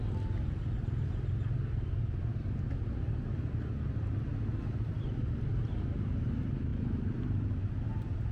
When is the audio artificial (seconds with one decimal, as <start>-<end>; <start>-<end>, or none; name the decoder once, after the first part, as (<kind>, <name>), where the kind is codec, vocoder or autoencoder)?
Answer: none